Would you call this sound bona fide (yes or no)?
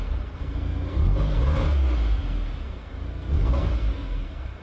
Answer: no